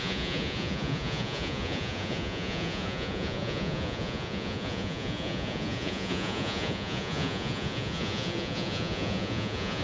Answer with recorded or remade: remade